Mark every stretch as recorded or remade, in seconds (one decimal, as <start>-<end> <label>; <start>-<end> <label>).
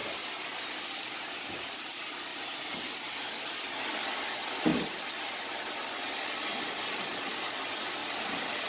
0.0-1.5 remade; 1.5-2.3 recorded; 2.3-3.8 remade; 3.8-8.0 recorded; 8.0-8.7 remade